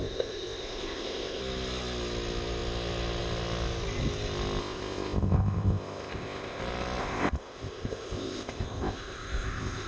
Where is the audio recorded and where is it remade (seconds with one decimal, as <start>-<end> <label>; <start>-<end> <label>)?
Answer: 0.0-1.4 remade; 1.4-4.6 recorded; 4.6-6.6 remade; 6.6-7.0 recorded; 7.0-9.9 remade